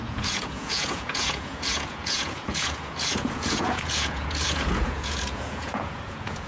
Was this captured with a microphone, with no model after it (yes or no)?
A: no